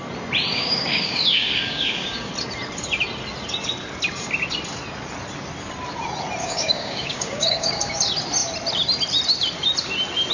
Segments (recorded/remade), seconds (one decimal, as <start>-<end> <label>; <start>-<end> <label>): 0.0-0.5 recorded; 0.5-2.3 remade; 2.3-6.4 recorded; 6.4-7.8 remade; 7.8-10.3 recorded